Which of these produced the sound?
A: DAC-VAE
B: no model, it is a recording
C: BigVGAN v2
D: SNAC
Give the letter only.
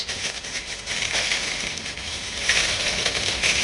A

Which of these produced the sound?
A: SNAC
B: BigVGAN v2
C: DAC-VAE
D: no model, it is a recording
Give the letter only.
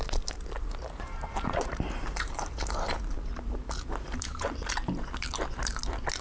B